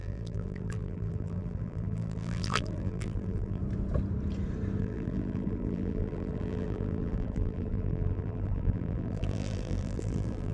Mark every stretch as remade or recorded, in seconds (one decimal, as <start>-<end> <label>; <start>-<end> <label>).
0.0-3.6 remade; 3.6-4.8 recorded; 4.8-10.5 remade